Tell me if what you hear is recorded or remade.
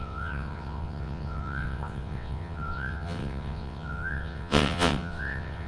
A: remade